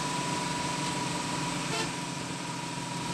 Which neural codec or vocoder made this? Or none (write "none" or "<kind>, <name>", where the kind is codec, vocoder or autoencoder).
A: vocoder, BigVGAN v2